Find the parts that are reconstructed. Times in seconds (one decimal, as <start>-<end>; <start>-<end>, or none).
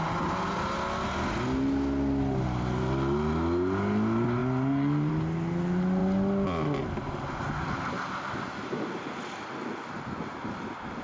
none